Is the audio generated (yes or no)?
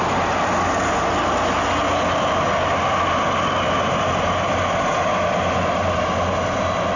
no